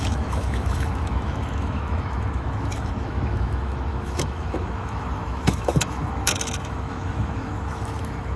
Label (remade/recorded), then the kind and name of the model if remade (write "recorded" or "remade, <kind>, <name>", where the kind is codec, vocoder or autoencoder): remade, autoencoder, DAC-VAE